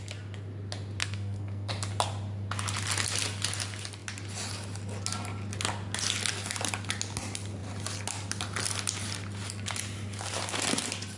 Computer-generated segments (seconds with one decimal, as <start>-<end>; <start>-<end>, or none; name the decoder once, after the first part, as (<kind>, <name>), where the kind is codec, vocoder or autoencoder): 1.0-1.7 (codec, SNAC)